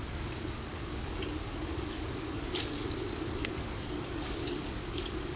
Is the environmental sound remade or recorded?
remade